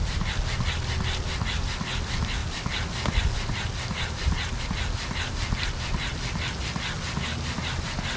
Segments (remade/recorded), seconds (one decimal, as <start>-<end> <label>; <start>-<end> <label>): 0.0-8.2 recorded